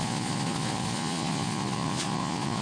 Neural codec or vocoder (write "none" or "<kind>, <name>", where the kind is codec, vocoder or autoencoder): vocoder, Vocos